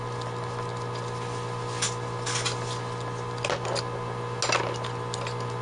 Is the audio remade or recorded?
recorded